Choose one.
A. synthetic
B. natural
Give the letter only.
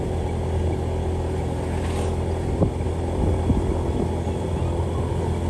B